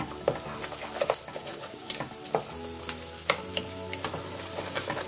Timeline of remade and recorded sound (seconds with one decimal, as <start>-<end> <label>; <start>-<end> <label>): 0.0-1.4 recorded; 1.4-1.9 remade; 1.9-5.1 recorded